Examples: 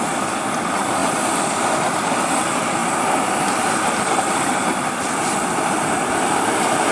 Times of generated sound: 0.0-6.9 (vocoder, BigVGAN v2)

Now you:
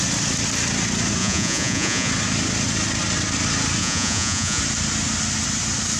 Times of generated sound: 1.2-2.1 (vocoder, Vocos); 3.8-4.6

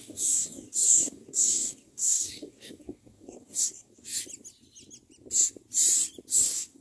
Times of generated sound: 0.0-4.2 (codec, DAC); 6.3-6.8

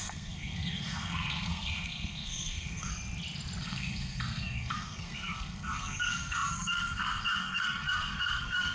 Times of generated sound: 0.0-2.9 (codec, SNAC); 3.6-8.7

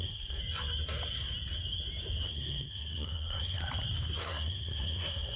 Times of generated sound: 0.0-0.4 (codec, SNAC); 2.3-3.6; 4.2-5.4

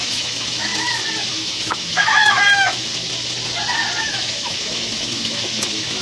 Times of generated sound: 0.0-0.7 (autoencoder, DAC-VAE); 1.3-2.9; 4.1-6.0